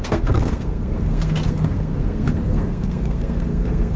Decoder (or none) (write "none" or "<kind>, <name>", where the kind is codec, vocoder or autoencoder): codec, SNAC